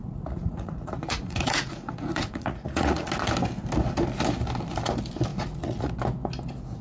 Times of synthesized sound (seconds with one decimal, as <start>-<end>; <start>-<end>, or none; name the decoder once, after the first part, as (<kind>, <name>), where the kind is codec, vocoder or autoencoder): 0.0-3.1 (vocoder, Vocos); 5.3-5.9